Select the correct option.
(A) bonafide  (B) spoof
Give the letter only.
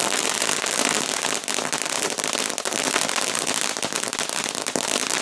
A